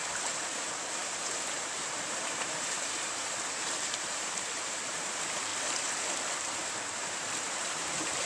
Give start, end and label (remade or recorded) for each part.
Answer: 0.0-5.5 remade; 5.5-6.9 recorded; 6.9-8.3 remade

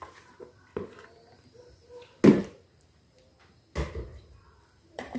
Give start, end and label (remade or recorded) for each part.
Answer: 0.0-2.4 recorded; 2.4-3.4 remade; 3.4-4.1 recorded; 4.1-5.2 remade

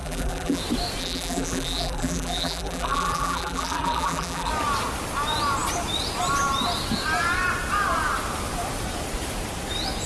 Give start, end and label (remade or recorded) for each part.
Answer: 0.0-0.6 remade; 0.6-1.0 recorded; 1.0-4.5 remade; 4.5-10.1 recorded